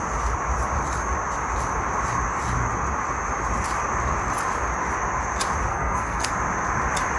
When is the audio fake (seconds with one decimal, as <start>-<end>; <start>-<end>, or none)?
5.7-6.3